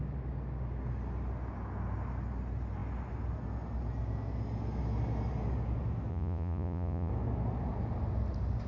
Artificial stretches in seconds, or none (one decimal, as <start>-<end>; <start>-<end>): 6.1-7.1